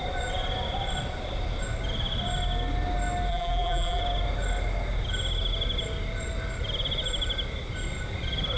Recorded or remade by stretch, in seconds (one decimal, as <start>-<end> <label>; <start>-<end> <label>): 0.0-3.3 recorded; 3.3-4.0 remade; 4.0-8.6 recorded